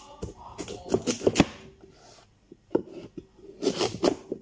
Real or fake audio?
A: real